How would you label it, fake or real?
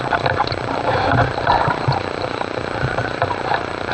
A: fake